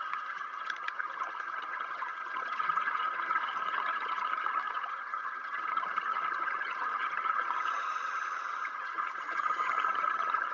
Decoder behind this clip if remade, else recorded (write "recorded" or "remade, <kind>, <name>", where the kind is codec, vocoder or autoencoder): remade, vocoder, HiFi-GAN